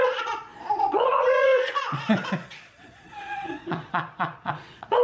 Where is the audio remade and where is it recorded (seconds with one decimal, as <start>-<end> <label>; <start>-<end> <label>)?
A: 0.0-5.0 remade